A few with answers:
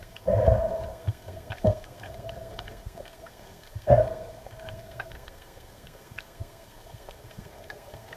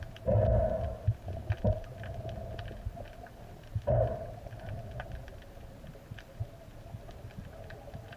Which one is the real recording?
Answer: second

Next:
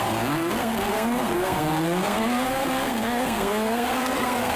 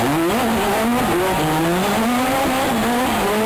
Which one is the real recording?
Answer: second